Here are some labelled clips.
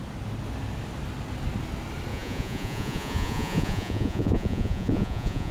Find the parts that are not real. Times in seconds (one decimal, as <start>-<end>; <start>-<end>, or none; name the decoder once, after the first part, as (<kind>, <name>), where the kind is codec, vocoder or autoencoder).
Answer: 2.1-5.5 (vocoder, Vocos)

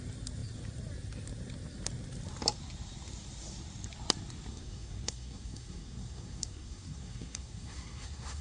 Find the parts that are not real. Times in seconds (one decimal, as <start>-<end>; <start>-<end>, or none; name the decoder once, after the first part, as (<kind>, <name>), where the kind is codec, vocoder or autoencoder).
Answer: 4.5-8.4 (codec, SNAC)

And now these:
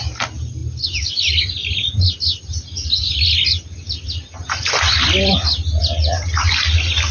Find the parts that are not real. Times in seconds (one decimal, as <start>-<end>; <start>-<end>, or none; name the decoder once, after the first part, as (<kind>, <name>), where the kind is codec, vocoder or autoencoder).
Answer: 5.8-6.5 (vocoder, BigVGAN v2)

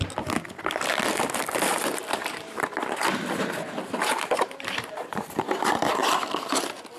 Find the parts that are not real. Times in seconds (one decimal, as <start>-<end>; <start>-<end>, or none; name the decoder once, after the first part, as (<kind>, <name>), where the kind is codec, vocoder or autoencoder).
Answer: 1.7-5.9 (vocoder, BigVGAN v2)

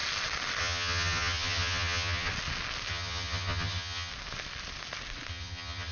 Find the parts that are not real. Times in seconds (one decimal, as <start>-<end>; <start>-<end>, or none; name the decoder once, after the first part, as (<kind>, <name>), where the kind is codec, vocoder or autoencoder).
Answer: 0.6-2.3 (vocoder, HiFi-GAN); 2.9-4.1; 5.3-5.9

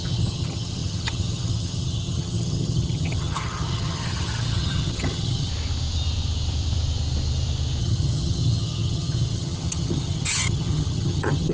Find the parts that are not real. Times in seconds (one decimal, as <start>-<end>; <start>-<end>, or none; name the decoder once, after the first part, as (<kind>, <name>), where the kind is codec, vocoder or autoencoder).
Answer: 0.0-5.5 (vocoder, HiFi-GAN); 7.8-11.5

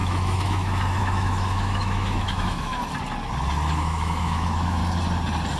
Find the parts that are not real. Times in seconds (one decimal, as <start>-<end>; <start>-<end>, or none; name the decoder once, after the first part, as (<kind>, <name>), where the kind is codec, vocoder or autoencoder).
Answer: 0.0-2.7 (autoencoder, DAC-VAE); 3.7-4.8